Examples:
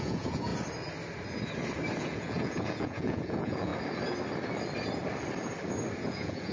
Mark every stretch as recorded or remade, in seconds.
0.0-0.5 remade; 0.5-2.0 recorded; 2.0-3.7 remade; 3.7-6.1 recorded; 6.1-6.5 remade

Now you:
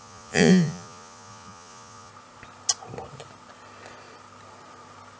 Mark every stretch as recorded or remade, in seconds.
0.0-2.1 remade; 2.1-5.2 recorded